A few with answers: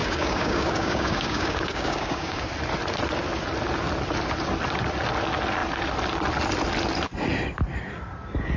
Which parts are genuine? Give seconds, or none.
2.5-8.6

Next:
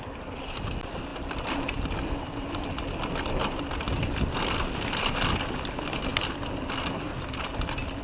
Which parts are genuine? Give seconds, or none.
0.0-8.0

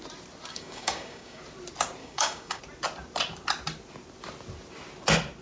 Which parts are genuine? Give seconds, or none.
0.0-0.5; 1.4-2.0; 2.6-5.4

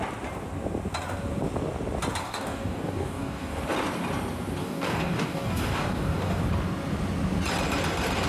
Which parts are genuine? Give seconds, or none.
0.0-2.2; 3.6-4.6; 6.4-8.3